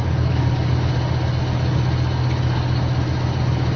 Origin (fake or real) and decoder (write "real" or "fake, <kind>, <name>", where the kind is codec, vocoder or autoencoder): real